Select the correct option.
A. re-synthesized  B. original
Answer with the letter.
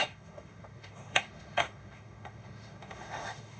A